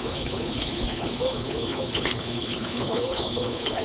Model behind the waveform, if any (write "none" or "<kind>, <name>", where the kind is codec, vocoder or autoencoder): codec, HILCodec